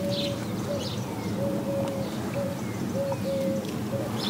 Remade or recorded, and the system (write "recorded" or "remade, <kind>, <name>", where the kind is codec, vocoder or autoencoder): recorded